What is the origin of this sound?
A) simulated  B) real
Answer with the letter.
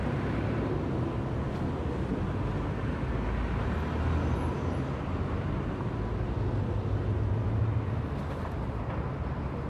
B